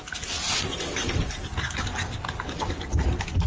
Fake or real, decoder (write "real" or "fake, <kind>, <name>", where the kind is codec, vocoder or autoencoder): real